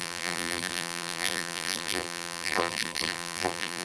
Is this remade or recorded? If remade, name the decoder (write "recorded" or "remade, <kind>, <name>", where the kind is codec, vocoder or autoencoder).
remade, vocoder, BigVGAN v2